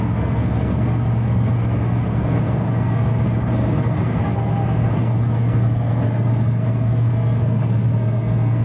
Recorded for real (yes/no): no